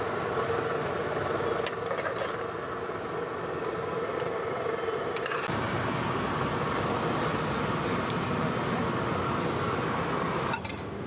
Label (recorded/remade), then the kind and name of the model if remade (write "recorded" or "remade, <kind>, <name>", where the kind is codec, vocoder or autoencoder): recorded